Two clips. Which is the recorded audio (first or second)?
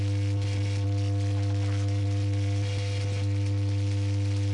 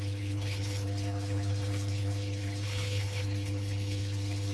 first